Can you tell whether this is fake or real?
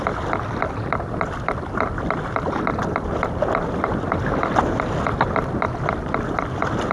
real